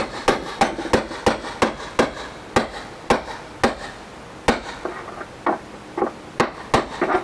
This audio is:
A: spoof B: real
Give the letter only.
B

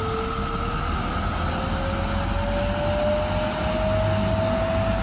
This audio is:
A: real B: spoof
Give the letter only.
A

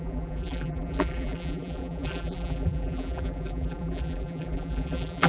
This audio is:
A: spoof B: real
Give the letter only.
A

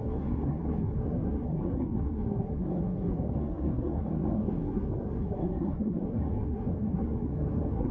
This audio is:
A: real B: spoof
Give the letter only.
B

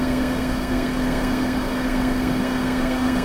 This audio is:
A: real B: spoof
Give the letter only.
B